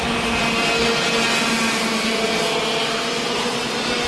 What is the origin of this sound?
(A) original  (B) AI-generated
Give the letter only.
A